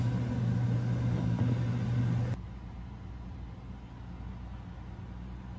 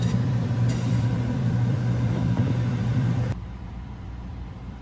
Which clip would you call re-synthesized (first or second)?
second